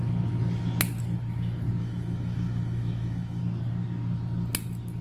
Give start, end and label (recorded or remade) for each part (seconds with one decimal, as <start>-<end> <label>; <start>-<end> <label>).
0.0-1.8 recorded; 1.8-3.4 remade; 3.4-5.0 recorded